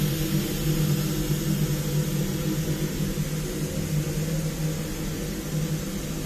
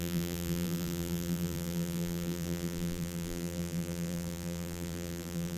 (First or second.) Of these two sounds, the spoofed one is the second